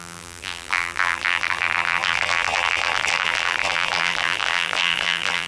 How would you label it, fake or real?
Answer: fake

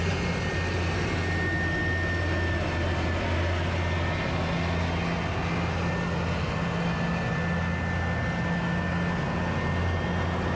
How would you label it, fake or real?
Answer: real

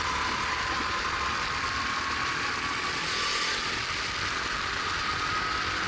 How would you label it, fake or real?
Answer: real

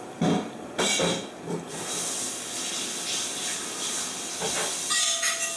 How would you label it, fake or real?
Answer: real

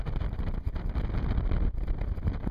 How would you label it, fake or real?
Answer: real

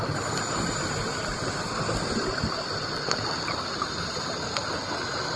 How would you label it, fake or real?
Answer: fake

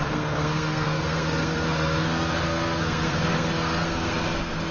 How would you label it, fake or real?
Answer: fake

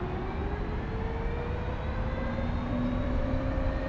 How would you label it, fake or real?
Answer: real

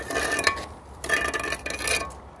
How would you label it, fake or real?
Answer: real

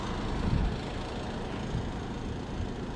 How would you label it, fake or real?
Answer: real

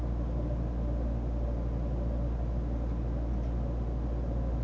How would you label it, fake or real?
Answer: real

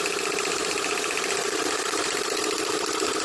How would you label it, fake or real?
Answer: real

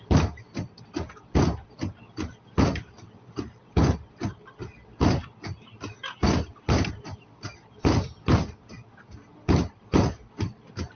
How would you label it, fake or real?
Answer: real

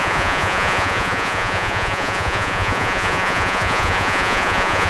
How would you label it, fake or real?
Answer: fake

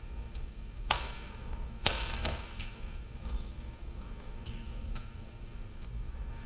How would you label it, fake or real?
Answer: fake